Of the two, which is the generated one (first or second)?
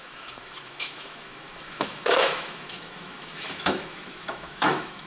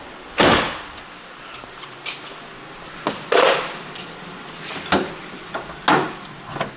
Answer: first